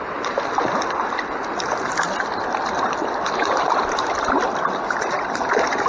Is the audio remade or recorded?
remade